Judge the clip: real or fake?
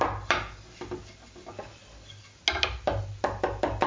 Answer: real